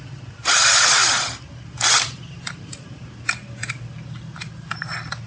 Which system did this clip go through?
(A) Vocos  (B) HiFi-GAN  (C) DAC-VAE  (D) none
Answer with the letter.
D